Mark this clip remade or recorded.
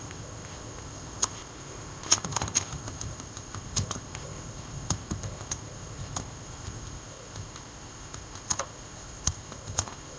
remade